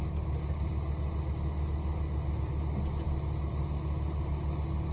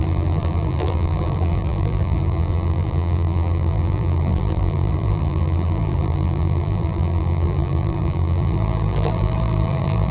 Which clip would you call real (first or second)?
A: first